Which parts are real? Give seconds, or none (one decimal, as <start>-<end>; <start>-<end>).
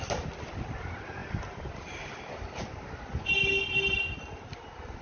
0.0-5.0